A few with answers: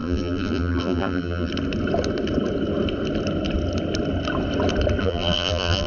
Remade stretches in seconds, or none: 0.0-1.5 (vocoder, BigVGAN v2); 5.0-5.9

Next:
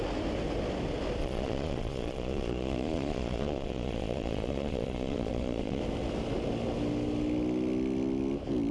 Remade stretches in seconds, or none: 1.2-5.8 (vocoder, Vocos)

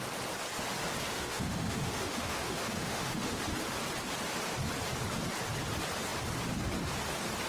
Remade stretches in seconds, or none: 1.1-3.4 (autoencoder, DAC-VAE)

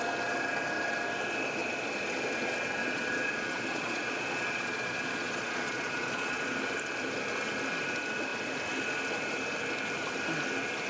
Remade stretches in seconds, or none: 2.8-6.6 (vocoder, Vocos)

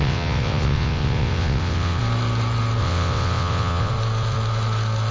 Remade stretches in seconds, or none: 0.0-2.0 (vocoder, WaveNeXt); 2.8-3.9

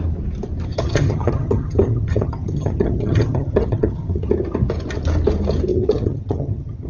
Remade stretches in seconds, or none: 0.7-4.3 (vocoder, HiFi-GAN); 5.7-6.9

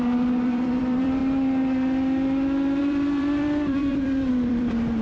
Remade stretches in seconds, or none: 0.0-1.2 (vocoder, BigVGAN v2); 2.8-5.0